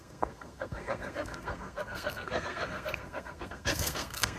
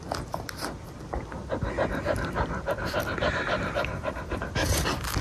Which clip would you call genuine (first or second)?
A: second